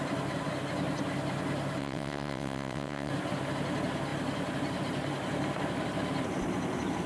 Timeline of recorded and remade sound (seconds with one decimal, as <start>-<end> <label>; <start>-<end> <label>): 0.0-1.8 recorded; 1.8-3.1 remade; 3.1-7.1 recorded